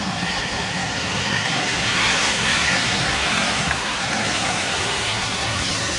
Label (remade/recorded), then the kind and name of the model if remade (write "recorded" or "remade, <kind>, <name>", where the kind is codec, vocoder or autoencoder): remade, codec, SNAC